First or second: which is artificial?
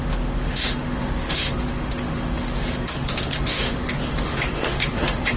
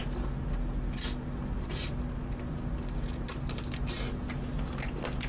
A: first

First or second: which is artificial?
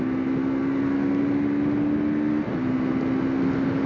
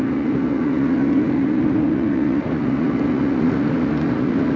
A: second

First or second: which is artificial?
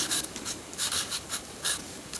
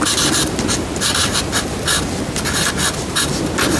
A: first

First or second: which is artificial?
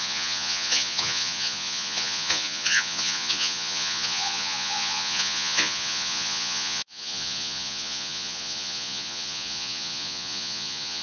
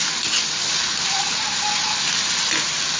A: first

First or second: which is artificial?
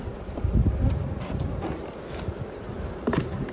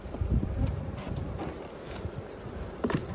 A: second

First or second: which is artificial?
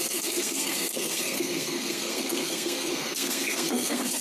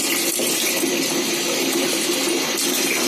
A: first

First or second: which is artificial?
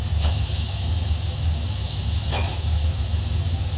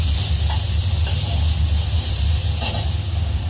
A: first